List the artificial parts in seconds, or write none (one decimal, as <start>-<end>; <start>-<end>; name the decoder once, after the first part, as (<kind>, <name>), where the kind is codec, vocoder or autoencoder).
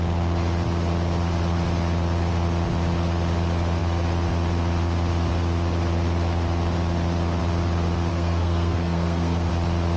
8.1-9.5 (codec, SNAC)